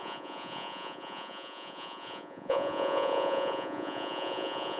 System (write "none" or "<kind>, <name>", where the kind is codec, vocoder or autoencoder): vocoder, Vocos